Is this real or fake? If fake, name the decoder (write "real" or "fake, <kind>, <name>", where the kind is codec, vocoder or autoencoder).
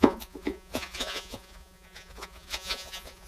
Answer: fake, vocoder, Vocos